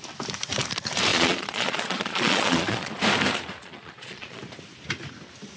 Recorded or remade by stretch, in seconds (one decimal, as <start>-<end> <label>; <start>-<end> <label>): 0.0-1.1 recorded; 1.1-3.0 remade; 3.0-3.6 recorded; 3.6-4.4 remade; 4.4-5.6 recorded